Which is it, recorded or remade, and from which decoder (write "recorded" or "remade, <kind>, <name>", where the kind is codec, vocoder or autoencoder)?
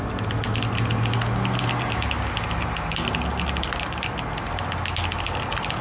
recorded